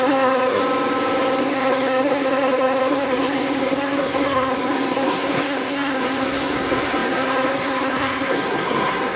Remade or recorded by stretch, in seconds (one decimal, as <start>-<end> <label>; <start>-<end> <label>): 0.0-0.6 remade; 0.6-1.4 recorded; 1.4-9.2 remade